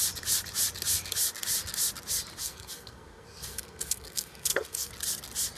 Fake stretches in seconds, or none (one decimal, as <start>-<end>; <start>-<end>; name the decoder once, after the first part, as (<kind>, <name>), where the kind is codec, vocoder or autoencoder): 2.4-4.9 (codec, SNAC)